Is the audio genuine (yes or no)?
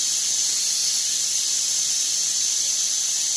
yes